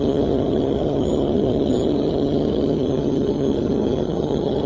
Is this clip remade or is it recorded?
remade